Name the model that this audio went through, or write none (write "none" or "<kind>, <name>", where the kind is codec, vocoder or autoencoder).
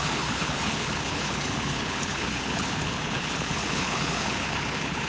codec, HILCodec